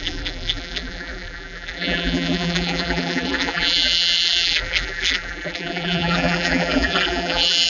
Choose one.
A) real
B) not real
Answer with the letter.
B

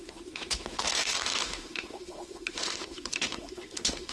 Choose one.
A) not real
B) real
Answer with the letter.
A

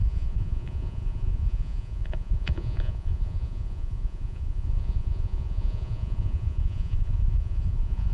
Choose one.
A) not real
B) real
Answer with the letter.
A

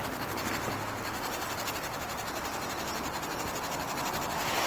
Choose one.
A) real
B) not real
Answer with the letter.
A